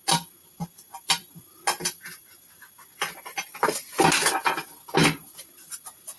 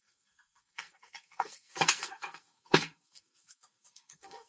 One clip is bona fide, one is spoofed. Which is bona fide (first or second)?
first